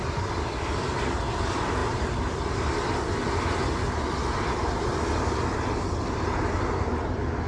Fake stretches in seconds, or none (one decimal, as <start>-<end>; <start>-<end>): none